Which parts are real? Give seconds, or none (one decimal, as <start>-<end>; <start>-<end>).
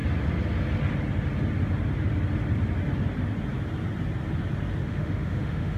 0.0-4.8